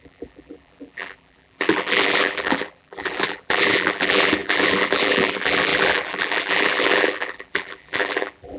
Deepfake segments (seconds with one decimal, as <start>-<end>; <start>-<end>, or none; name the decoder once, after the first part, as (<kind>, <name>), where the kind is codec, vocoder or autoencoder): 0.0-8.6 (vocoder, BigVGAN v2)